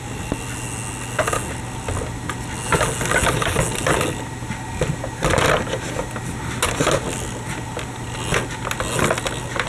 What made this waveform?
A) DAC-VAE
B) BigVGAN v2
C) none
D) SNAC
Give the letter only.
C